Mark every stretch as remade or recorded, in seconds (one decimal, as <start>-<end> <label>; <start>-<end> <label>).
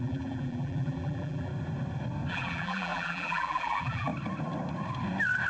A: 0.0-1.5 remade; 1.5-2.3 recorded; 2.3-4.1 remade; 4.1-5.5 recorded